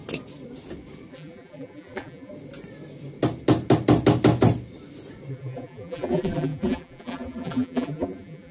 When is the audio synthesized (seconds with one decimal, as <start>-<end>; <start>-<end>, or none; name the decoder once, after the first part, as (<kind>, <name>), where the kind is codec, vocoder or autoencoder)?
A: 1.1-2.3 (vocoder, BigVGAN v2); 5.3-8.5